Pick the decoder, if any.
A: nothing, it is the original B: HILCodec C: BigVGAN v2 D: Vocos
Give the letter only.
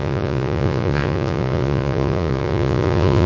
D